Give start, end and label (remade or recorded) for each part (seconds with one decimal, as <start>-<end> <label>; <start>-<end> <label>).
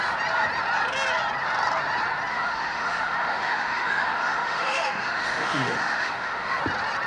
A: 0.0-2.3 recorded; 2.3-6.6 remade; 6.6-7.1 recorded